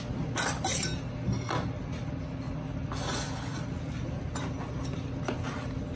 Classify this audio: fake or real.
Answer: real